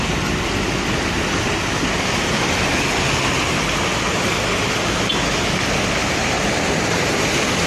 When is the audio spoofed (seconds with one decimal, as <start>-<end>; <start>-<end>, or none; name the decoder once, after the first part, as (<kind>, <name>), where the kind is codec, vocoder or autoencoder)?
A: 6.0-7.7 (vocoder, BigVGAN v2)